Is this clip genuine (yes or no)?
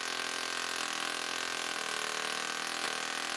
yes